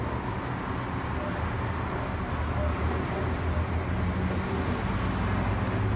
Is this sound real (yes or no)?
yes